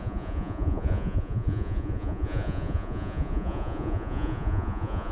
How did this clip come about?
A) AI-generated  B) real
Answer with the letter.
A